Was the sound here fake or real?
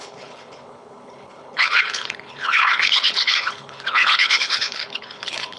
fake